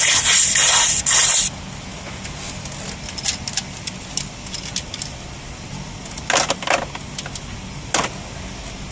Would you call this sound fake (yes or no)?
no